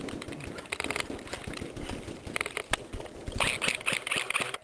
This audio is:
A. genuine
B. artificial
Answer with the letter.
A